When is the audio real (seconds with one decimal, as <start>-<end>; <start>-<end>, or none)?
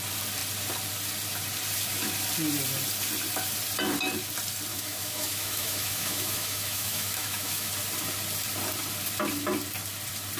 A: 0.0-4.7; 7.7-10.4